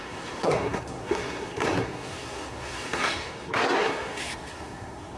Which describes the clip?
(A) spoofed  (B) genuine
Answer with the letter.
A